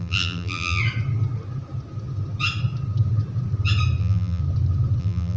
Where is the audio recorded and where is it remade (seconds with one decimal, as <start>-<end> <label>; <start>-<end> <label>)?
0.0-0.8 remade; 0.8-4.0 recorded; 4.0-4.4 remade; 4.4-5.0 recorded; 5.0-5.4 remade